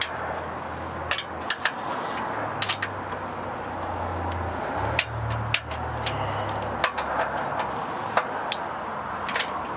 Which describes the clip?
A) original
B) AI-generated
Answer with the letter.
A